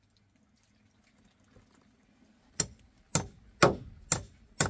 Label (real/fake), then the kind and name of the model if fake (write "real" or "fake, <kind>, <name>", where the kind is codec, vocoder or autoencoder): real